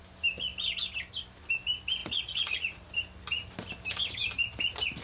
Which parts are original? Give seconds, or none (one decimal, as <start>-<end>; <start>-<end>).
0.0-2.0; 2.9-5.0